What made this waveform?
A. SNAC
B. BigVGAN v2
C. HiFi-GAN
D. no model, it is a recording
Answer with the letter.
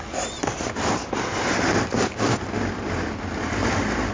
D